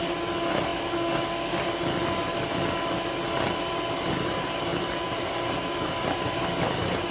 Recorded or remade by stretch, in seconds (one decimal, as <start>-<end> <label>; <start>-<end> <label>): 0.0-7.1 recorded